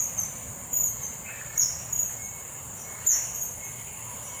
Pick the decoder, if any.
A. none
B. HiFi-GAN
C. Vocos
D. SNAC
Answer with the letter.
A